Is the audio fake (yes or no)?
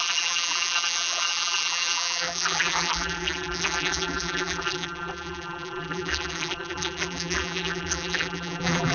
yes